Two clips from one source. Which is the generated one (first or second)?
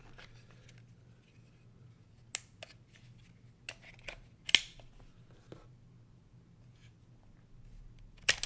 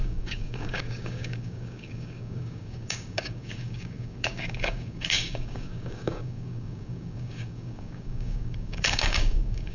second